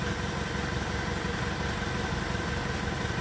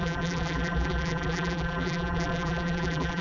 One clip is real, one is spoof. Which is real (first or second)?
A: first